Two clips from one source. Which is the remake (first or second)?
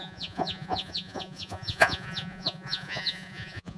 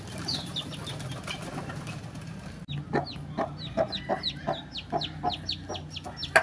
first